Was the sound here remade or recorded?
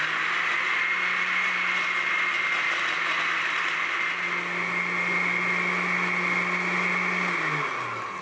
recorded